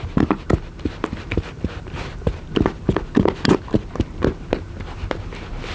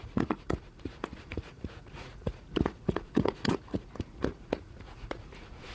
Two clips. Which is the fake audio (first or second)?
second